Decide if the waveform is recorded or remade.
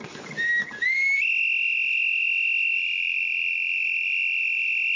recorded